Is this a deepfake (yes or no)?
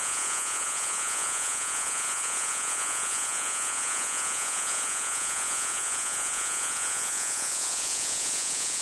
yes